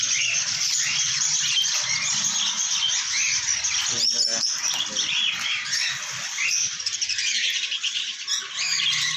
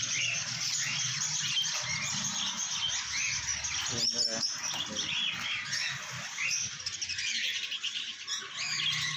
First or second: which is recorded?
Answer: second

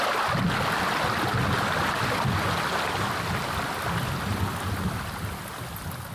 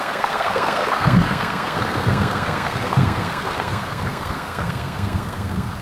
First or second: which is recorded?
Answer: first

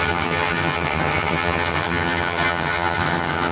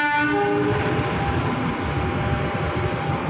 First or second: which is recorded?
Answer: second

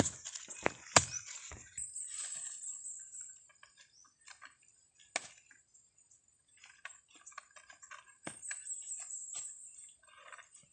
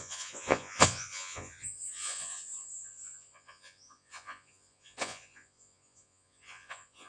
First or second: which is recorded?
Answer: first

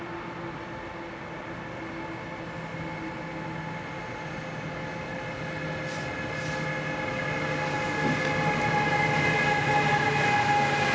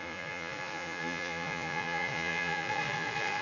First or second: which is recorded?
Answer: first